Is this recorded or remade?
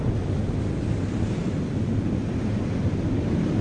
recorded